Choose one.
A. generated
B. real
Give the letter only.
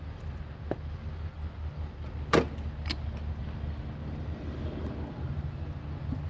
B